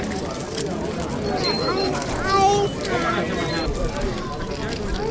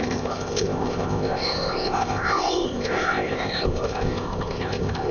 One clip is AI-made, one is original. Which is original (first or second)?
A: first